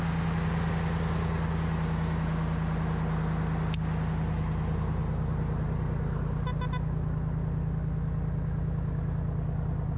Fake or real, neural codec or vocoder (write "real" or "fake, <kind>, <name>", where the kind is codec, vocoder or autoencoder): real